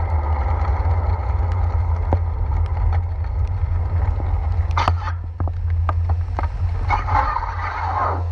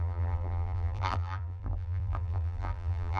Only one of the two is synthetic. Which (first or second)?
second